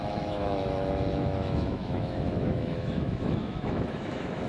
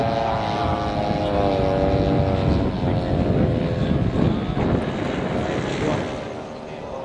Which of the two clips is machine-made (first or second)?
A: first